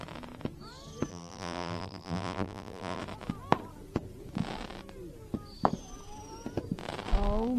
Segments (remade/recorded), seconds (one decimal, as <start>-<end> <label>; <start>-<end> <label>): 0.0-1.1 recorded; 1.1-3.0 remade; 3.0-7.6 recorded